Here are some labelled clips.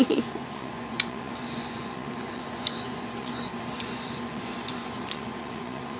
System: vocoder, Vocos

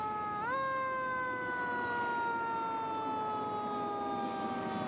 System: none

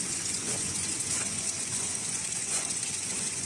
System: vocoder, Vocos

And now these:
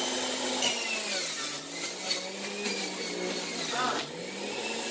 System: none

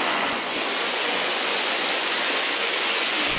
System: vocoder, Vocos